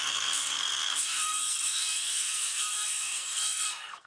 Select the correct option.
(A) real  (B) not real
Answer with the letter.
B